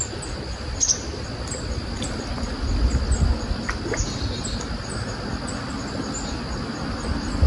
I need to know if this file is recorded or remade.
recorded